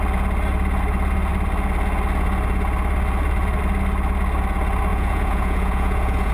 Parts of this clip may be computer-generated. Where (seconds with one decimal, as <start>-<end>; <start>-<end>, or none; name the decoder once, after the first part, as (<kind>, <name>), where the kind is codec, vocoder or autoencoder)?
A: 4.9-6.3 (vocoder, Vocos)